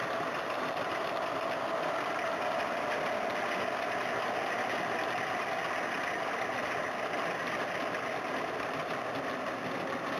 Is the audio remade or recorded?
recorded